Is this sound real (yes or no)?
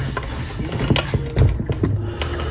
yes